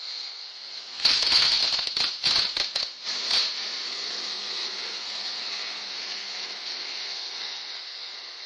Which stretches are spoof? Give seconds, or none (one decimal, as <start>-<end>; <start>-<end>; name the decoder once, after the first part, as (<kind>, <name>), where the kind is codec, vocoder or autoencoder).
0.0-1.6 (codec, SNAC); 3.9-8.5